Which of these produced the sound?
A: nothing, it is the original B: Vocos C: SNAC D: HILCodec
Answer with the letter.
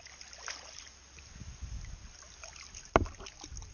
A